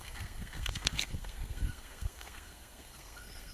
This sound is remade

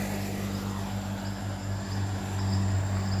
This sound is recorded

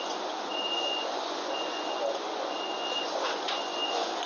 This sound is remade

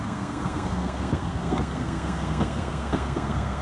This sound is remade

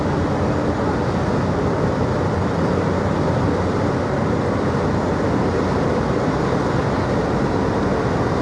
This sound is recorded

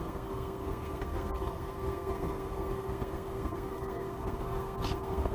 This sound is remade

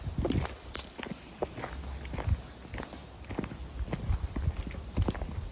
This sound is recorded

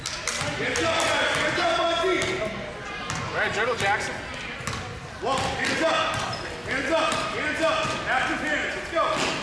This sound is recorded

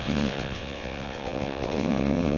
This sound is remade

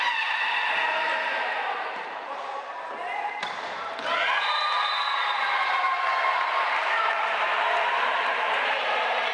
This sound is remade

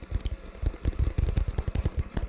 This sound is recorded